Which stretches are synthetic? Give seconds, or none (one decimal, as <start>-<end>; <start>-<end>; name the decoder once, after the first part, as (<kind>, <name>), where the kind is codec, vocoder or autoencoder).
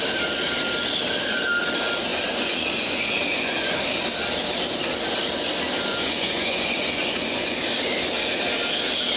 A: 2.1-3.8 (vocoder, Vocos); 5.9-7.6